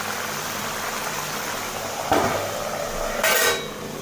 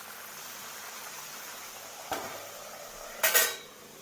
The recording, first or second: first